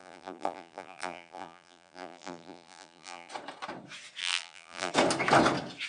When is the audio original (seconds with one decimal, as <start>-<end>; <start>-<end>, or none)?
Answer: 3.3-4.2; 4.9-5.9

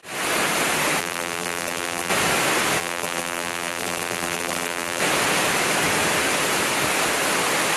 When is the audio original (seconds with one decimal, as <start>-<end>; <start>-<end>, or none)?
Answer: 0.0-1.0; 2.1-2.8; 5.0-7.8

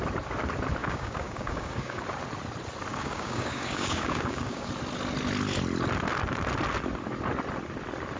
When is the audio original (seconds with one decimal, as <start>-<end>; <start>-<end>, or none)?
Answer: 0.0-0.8; 2.0-2.9; 4.7-8.2